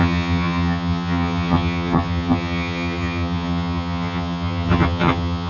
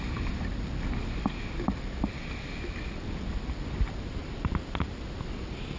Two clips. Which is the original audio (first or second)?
second